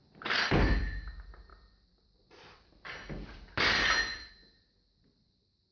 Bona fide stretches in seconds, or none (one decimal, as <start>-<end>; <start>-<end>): 0.0-1.5; 4.3-5.7